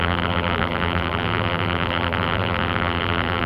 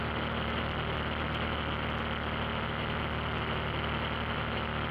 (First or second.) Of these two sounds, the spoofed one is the first